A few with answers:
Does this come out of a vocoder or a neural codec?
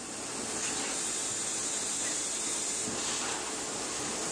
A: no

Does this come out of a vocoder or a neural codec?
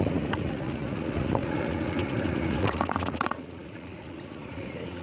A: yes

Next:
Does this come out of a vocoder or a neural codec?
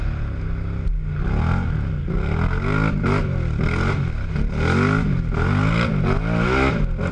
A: no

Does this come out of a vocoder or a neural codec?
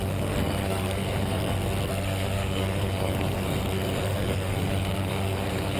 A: yes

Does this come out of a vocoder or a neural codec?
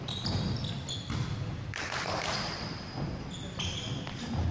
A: no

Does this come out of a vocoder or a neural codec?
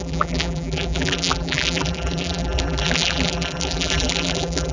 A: yes